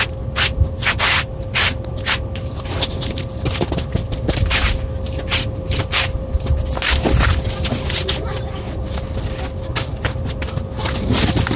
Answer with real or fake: real